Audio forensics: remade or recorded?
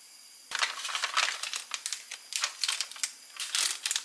recorded